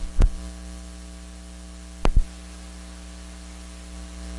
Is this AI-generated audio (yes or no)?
no